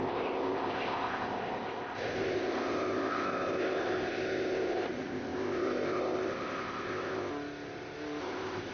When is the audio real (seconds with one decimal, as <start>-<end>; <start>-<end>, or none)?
7.3-8.2